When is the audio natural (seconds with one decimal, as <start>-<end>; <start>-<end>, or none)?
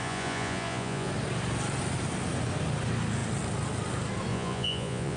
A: 1.1-4.3